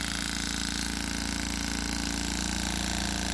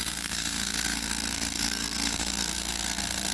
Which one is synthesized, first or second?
second